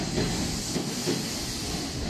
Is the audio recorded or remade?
recorded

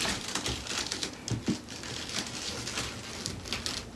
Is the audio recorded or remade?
recorded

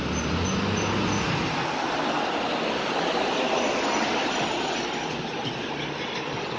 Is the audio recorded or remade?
recorded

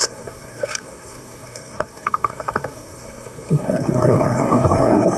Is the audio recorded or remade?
remade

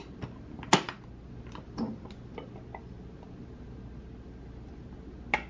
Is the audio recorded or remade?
recorded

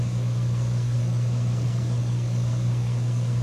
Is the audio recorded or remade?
remade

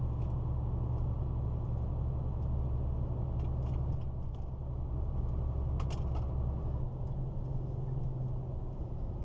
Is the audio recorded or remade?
recorded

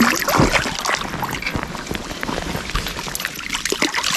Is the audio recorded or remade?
recorded